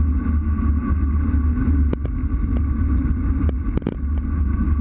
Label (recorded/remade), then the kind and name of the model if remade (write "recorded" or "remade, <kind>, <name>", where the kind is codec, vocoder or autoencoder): recorded